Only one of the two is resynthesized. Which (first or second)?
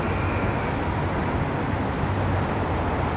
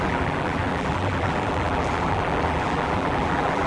second